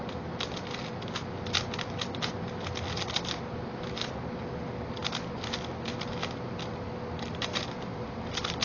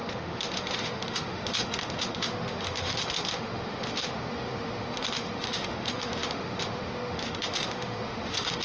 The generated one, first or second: second